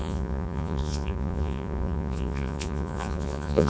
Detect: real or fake fake